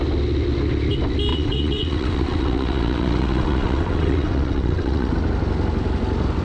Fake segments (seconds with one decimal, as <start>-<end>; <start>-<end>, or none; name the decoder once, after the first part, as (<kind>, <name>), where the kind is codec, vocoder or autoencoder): 1.3-5.1 (vocoder, WaveNeXt)